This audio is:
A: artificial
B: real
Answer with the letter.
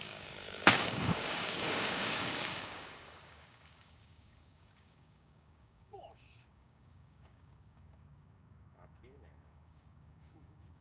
A